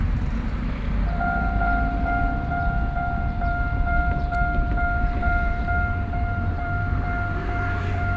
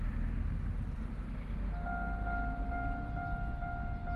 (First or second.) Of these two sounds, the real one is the second